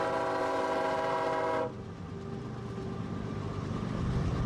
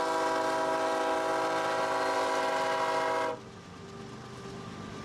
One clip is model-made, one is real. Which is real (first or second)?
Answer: second